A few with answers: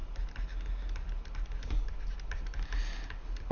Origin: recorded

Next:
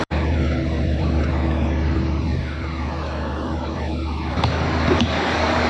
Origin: remade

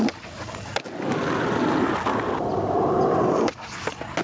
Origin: recorded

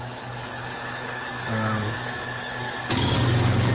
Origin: remade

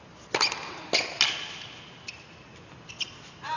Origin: recorded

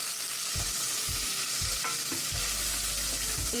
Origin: recorded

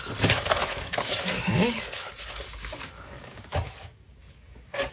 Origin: remade